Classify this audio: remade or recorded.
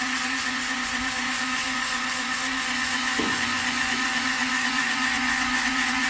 remade